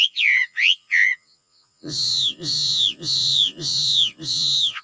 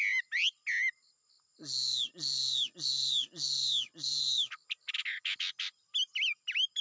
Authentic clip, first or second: second